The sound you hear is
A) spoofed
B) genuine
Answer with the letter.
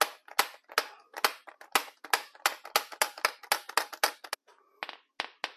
B